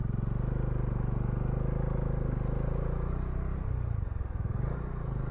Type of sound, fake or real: real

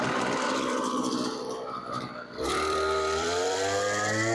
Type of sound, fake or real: fake